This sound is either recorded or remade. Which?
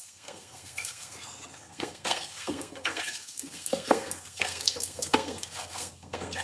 remade